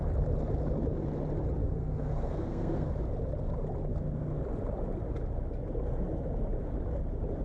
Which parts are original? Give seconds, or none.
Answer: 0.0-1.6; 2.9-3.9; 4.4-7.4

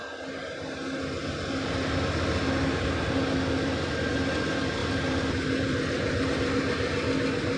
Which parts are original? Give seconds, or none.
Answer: 0.0-4.8; 6.3-7.6

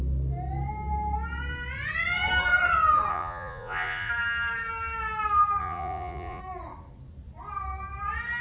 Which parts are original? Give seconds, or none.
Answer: 0.0-3.1; 4.1-5.6; 6.4-8.4